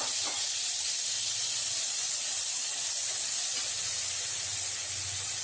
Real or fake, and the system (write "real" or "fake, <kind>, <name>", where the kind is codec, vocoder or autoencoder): real